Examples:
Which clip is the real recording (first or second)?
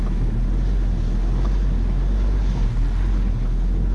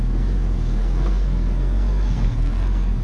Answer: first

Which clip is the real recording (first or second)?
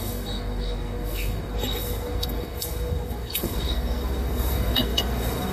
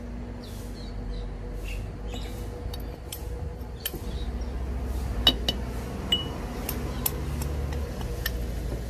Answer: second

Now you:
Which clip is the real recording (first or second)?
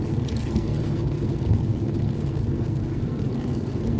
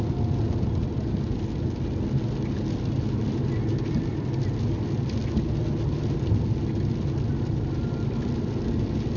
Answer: second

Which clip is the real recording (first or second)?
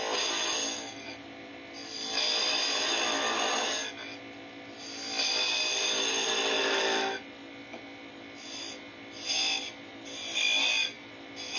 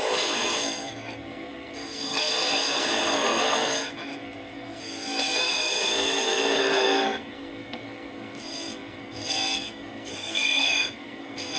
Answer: first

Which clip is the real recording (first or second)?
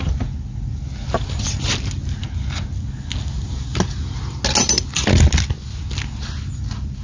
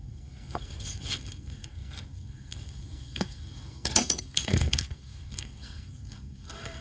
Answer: first